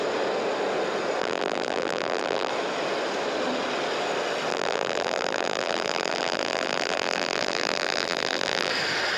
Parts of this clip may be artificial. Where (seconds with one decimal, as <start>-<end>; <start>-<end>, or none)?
1.2-2.5; 4.5-8.7